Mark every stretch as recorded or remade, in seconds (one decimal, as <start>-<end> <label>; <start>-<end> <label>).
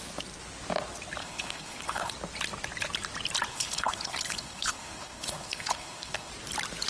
0.0-1.2 recorded; 1.2-2.1 remade; 2.1-3.5 recorded; 3.5-6.3 remade; 6.3-6.9 recorded